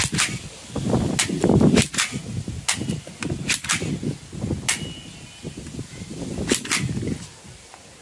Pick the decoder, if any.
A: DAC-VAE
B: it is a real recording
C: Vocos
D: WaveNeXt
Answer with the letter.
B